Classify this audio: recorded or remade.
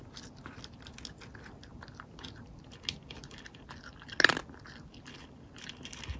recorded